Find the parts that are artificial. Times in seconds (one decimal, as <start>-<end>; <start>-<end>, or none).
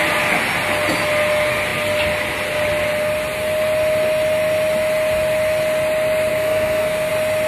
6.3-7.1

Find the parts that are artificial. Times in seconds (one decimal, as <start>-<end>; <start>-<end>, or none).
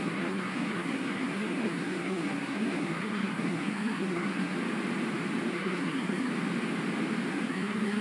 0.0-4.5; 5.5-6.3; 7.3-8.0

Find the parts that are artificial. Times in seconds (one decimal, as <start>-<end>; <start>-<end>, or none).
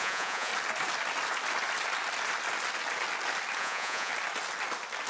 0.0-0.5; 3.6-4.1